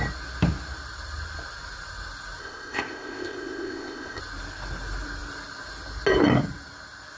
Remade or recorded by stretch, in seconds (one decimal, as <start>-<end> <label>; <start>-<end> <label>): 0.0-2.4 recorded; 2.4-4.2 remade; 4.2-7.2 recorded